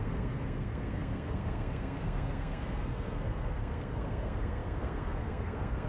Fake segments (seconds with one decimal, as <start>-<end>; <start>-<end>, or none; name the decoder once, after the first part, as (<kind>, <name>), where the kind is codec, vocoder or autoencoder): 0.0-5.9 (codec, SNAC)